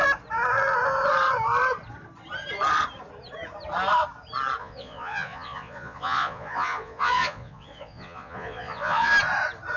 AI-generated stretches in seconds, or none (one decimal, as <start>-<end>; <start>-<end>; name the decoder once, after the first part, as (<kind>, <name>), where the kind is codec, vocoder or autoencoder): 4.6-9.1 (vocoder, Vocos)